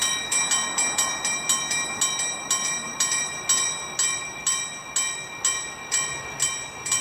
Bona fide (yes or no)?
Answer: yes